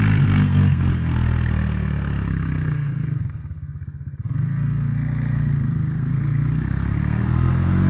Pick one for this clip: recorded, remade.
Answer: remade